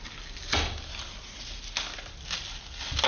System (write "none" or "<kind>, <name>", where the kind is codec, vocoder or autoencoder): none